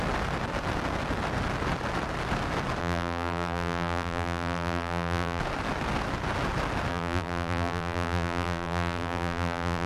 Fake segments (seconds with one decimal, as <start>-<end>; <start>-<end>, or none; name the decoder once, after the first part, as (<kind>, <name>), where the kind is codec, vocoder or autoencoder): 2.8-5.4 (vocoder, BigVGAN v2); 6.9-9.9